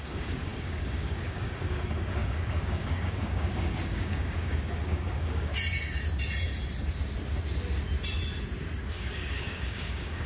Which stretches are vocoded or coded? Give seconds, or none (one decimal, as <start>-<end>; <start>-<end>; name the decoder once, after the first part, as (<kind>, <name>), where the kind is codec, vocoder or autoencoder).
0.0-5.5 (codec, DAC); 8.9-10.3